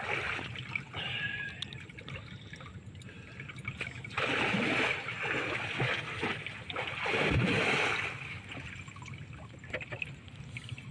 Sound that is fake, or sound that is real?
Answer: real